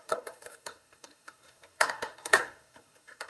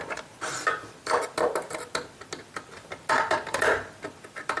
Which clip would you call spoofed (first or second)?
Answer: first